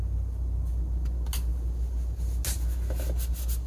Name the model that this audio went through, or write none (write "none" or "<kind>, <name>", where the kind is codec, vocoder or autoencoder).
none